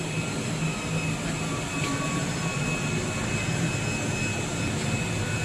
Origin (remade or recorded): recorded